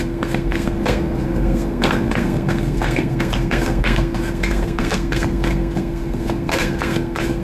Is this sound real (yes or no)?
no